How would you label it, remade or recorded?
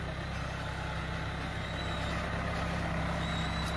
recorded